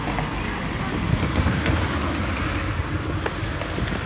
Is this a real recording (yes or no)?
yes